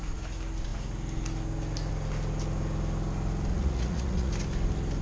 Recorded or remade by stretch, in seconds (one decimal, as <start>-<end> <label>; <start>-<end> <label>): 0.0-3.5 recorded; 3.5-4.3 remade; 4.3-5.0 recorded